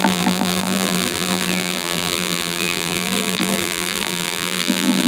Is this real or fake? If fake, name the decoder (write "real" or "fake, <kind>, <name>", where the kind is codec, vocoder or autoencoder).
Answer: fake, vocoder, BigVGAN v2